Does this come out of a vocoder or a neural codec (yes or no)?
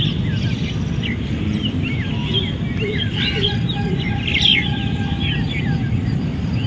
no